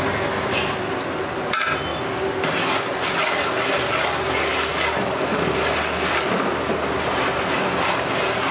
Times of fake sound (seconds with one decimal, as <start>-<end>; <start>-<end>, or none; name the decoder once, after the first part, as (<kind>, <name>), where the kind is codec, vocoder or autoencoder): none

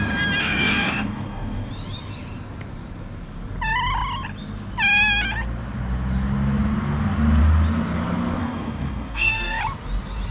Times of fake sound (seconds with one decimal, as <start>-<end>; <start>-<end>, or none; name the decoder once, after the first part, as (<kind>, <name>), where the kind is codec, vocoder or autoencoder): 0.4-1.7 (codec, DAC); 8.4-9.6

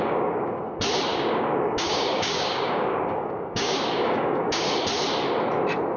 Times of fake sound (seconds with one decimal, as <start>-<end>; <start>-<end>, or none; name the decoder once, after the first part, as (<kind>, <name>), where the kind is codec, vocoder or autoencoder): 0.0-0.6 (codec, DAC); 1.1-4.7

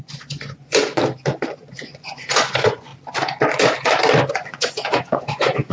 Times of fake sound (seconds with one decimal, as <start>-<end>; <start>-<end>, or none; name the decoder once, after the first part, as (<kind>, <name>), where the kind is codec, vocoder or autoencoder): 0.0-1.0 (vocoder, Vocos); 1.8-2.9; 4.3-5.7